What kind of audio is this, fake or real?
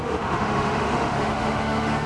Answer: fake